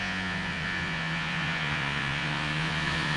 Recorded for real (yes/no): no